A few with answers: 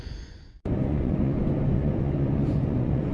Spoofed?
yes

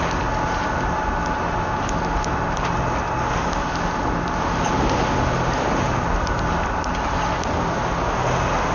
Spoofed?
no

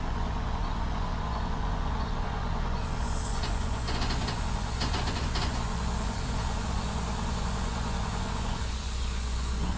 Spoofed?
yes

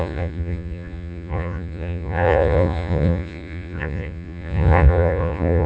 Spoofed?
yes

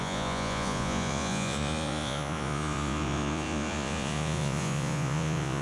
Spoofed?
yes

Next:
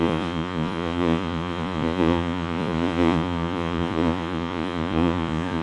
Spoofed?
yes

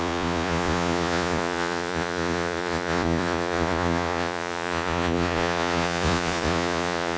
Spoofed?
yes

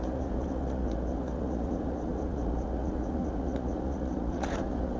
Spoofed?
yes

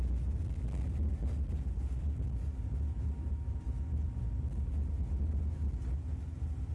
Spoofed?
no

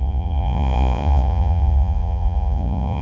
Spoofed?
yes